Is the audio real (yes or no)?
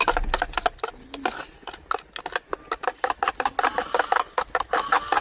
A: yes